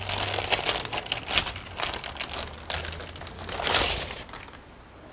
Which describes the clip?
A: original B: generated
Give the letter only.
A